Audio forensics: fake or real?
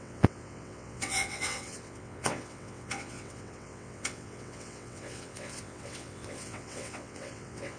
fake